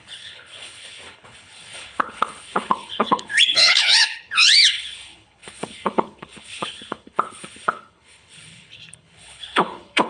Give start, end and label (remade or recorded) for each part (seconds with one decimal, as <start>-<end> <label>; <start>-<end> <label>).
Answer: 0.0-10.1 remade